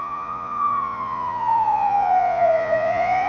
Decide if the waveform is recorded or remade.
remade